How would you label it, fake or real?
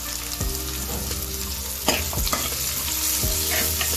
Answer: real